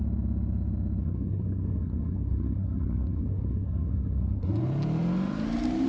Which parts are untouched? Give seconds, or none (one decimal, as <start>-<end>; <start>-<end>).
0.0-1.0; 4.5-5.9